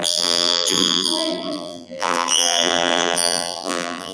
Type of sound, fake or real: fake